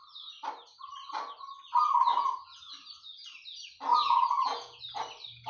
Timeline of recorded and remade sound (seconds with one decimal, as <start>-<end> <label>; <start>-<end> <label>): 0.0-2.1 recorded; 2.1-2.7 remade; 2.7-3.9 recorded; 3.9-4.8 remade; 4.8-5.5 recorded